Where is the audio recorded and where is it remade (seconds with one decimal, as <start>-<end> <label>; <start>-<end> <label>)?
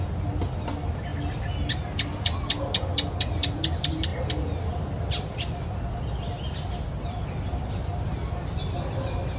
0.0-9.4 recorded